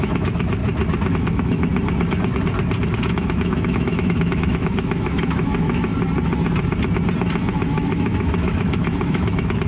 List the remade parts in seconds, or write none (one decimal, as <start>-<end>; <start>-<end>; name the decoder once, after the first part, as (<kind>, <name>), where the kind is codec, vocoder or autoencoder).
0.0-0.6 (autoencoder, DAC-VAE); 1.1-1.7; 2.9-5.9; 7.5-9.7

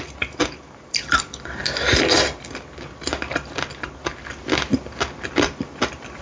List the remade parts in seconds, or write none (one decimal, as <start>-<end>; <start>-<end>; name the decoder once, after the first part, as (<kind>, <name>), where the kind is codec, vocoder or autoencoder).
0.0-1.6 (vocoder, BigVGAN v2); 5.3-6.2

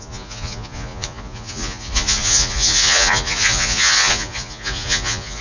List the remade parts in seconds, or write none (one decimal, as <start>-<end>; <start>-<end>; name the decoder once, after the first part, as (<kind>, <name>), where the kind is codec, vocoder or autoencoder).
0.0-5.4 (vocoder, Vocos)

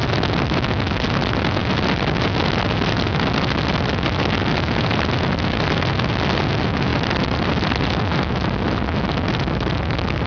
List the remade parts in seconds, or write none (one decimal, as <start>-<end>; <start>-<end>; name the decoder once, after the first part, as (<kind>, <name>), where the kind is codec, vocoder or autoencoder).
6.9-8.0 (vocoder, BigVGAN v2)

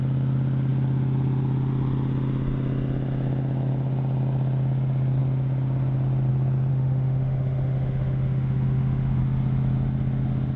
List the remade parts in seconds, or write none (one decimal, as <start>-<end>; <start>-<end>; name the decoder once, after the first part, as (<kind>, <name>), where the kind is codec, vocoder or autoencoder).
6.7-9.2 (autoencoder, DAC-VAE)

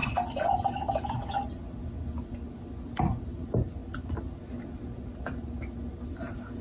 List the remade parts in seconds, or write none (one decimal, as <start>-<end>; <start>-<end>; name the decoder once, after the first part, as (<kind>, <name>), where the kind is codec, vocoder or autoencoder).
none

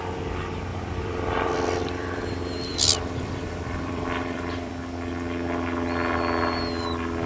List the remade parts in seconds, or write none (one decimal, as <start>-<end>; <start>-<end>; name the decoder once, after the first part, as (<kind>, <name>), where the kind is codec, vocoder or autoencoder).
0.7-2.2 (vocoder, BigVGAN v2); 2.7-4.7